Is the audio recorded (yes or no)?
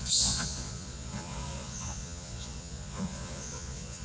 no